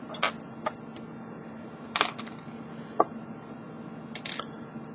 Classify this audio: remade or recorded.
recorded